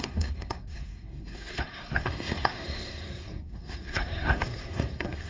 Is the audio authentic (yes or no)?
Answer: no